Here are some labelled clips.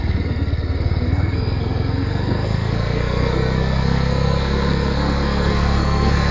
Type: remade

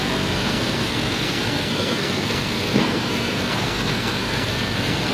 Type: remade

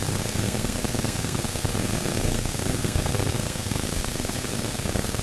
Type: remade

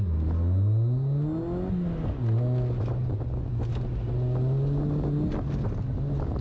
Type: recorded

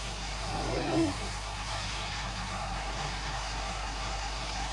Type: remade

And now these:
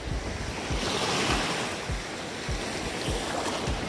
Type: recorded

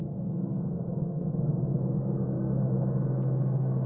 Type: remade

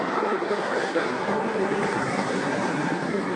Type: remade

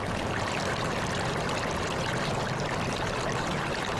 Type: recorded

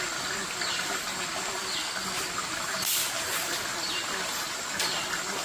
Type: recorded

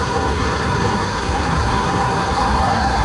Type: remade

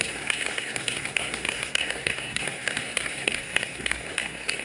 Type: remade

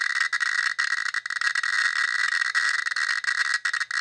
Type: recorded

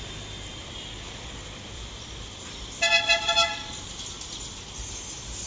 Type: recorded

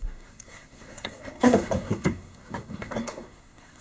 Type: remade